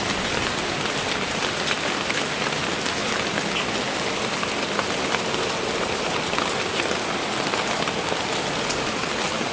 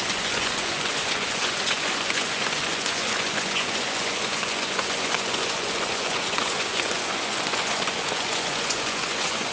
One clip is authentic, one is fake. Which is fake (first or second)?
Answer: second